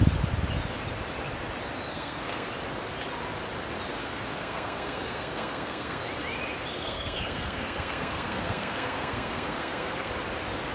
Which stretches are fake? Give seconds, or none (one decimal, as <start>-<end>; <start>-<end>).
1.9-2.5; 4.0-6.0; 6.7-10.1

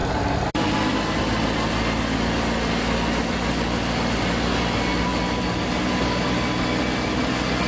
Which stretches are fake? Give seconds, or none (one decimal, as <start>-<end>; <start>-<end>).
0.0-0.9

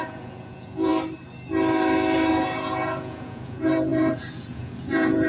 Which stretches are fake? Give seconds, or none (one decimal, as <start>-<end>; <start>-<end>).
0.0-0.9; 2.3-5.3

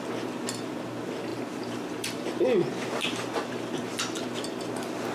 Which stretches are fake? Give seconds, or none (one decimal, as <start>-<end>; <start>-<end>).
none

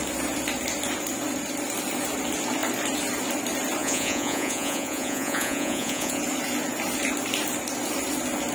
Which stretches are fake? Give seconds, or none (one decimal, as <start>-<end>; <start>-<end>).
3.8-6.2